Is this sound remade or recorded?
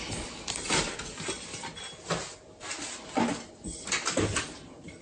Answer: recorded